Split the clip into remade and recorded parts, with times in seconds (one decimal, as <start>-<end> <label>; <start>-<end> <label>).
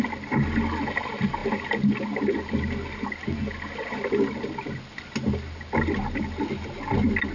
0.0-7.3 recorded